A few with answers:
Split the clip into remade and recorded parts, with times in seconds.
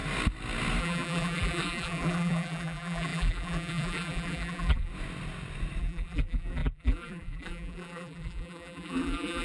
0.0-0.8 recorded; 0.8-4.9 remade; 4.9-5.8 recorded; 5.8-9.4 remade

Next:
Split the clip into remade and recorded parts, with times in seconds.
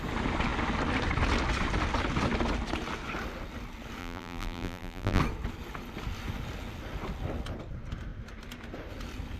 0.0-4.0 recorded; 4.0-5.2 remade; 5.2-9.4 recorded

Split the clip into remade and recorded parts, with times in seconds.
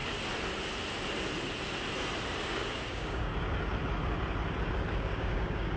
0.0-2.4 recorded; 2.4-3.3 remade; 3.3-4.9 recorded; 4.9-5.8 remade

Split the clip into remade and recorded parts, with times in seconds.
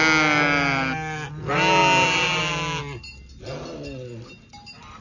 0.0-5.0 recorded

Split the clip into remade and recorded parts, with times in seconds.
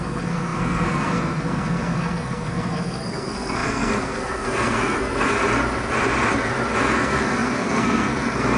0.0-5.4 remade; 5.4-6.8 recorded; 6.8-8.6 remade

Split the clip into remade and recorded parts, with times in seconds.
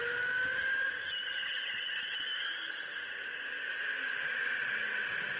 0.0-5.4 recorded